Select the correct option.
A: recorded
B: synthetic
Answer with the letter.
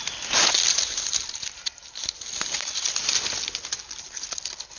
A